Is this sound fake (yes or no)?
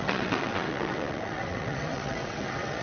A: yes